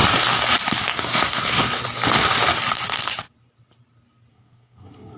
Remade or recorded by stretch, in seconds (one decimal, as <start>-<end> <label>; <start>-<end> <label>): 0.0-0.9 recorded; 0.9-1.6 remade; 1.6-4.3 recorded; 4.3-5.2 remade